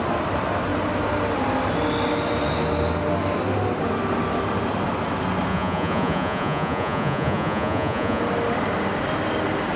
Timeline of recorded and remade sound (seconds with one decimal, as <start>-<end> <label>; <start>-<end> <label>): 0.0-5.5 recorded; 5.5-8.2 remade; 8.2-9.8 recorded